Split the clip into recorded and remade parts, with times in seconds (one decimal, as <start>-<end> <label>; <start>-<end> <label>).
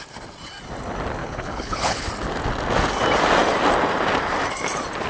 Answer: 0.0-1.2 recorded; 1.2-2.1 remade; 2.1-5.1 recorded